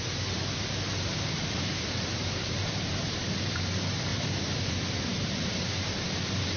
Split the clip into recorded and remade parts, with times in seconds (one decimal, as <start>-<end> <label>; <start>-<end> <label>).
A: 0.0-0.9 recorded; 0.9-3.6 remade; 3.6-4.1 recorded; 4.1-6.6 remade